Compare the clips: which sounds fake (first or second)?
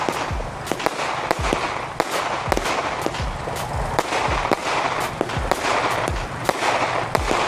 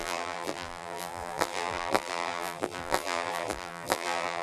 second